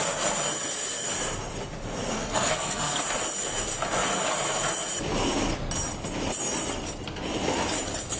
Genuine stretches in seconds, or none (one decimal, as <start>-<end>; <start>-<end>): 0.0-2.1; 3.0-8.2